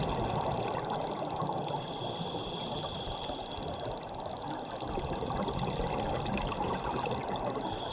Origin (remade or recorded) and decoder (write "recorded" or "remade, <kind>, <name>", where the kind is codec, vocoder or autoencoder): recorded